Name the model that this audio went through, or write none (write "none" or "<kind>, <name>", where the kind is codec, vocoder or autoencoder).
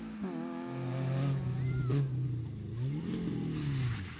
none